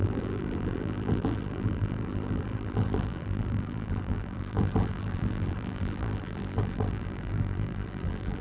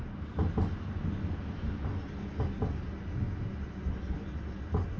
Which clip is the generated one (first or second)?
first